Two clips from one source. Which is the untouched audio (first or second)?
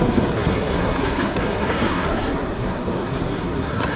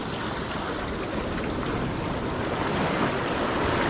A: second